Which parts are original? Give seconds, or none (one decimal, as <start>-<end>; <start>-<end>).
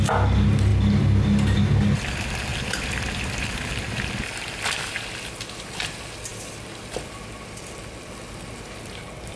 0.0-9.4